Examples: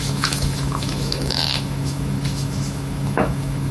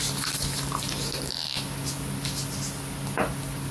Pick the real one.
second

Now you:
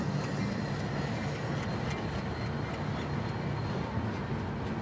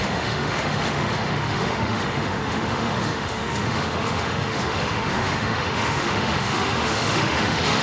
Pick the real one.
first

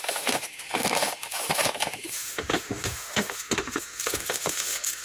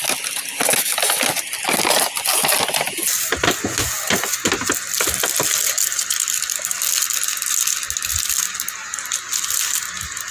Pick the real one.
second